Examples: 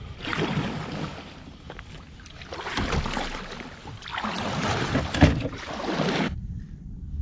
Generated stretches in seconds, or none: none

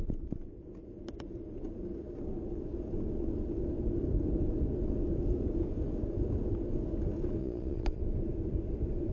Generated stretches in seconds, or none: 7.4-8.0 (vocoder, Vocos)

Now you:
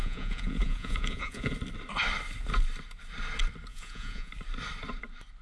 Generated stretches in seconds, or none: 0.0-1.5 (vocoder, Vocos); 3.7-4.3